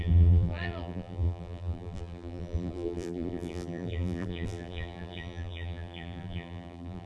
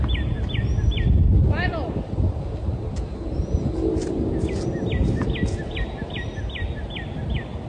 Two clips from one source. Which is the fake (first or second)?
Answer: first